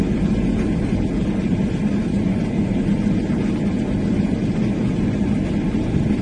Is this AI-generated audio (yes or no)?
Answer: no